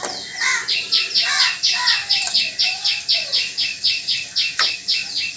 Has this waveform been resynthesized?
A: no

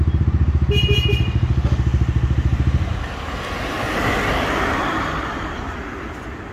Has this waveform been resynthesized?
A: no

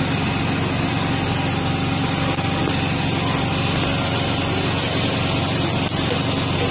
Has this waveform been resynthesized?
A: no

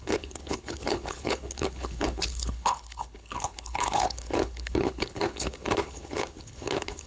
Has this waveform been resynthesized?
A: yes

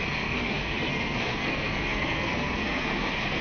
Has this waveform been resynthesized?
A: yes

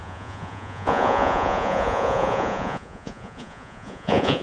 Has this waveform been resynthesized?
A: yes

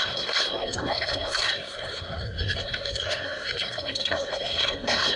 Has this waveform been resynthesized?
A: yes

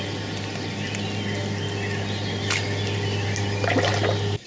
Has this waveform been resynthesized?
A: no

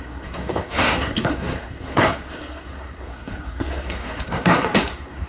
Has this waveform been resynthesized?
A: yes